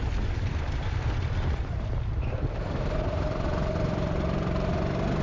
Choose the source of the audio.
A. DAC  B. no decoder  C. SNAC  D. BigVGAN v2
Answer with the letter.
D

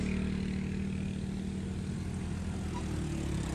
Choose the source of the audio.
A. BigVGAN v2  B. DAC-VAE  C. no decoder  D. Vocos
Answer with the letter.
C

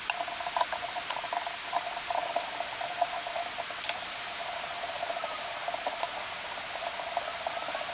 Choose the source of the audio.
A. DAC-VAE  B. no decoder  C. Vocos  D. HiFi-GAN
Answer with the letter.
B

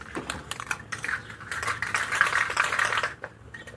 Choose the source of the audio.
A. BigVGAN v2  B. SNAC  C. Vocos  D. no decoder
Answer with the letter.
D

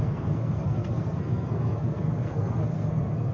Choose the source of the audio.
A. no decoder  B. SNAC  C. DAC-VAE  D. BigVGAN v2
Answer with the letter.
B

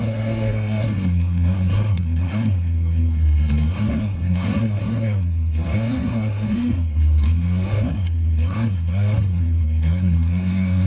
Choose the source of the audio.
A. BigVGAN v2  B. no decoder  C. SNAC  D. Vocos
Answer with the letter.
C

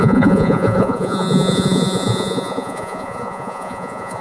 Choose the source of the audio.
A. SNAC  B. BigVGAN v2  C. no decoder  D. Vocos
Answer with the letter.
D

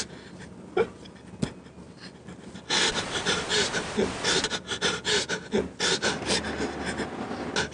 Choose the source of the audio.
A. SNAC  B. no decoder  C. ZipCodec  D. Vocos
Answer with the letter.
B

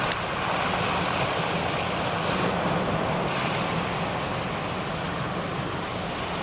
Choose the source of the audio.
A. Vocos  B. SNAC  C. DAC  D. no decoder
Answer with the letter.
D